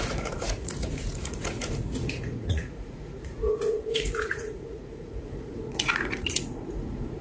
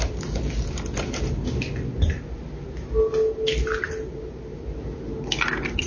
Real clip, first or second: second